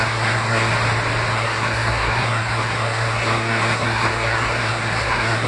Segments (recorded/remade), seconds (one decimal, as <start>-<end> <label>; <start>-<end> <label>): 0.0-0.7 remade; 0.7-1.3 recorded; 1.3-5.5 remade